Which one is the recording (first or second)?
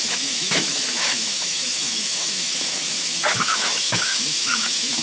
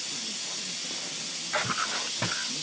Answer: second